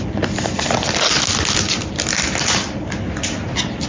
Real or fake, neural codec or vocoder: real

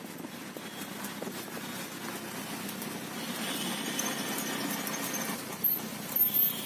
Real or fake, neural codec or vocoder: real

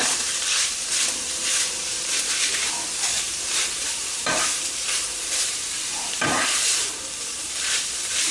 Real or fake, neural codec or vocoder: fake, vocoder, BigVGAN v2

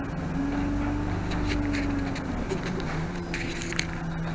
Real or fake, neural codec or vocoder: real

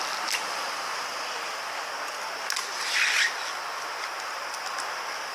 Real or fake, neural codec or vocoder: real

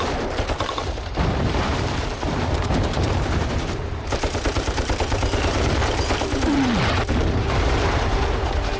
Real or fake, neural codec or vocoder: fake, vocoder, BigVGAN v2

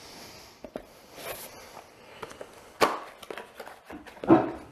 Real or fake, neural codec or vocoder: real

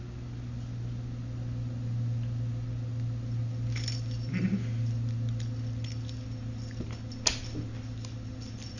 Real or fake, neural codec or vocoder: real